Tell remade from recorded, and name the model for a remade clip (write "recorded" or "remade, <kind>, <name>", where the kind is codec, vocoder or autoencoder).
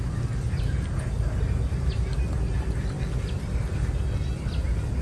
recorded